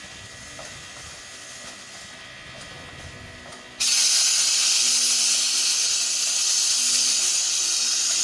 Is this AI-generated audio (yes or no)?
no